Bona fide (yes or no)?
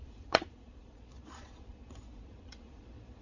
no